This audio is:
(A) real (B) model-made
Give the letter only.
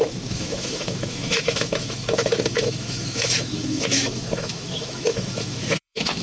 B